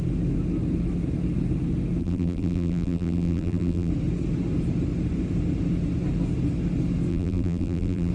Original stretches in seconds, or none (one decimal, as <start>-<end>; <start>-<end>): 0.0-2.0; 3.9-7.1